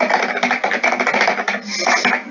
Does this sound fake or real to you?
real